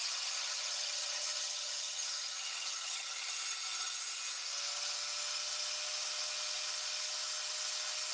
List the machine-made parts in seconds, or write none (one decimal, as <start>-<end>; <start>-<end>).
0.0-3.3